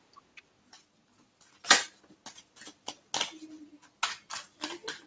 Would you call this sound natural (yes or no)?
yes